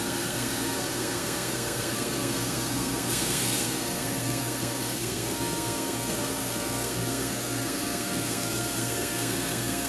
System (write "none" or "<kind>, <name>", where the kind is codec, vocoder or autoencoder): codec, SNAC